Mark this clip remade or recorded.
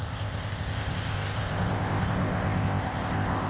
remade